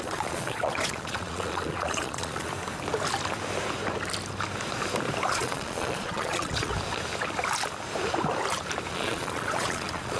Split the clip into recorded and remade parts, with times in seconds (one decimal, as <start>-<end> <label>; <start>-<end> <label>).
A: 0.0-2.5 remade; 2.5-5.3 recorded; 5.3-6.7 remade; 6.7-8.9 recorded; 8.9-10.2 remade